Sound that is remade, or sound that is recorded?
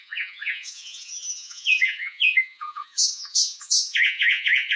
remade